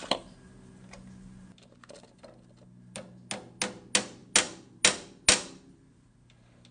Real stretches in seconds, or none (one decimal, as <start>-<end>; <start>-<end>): 0.0-6.7